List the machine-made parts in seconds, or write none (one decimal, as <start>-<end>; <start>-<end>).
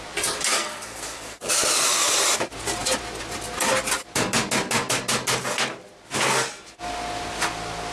0.5-1.5